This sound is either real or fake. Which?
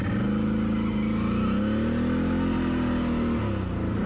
real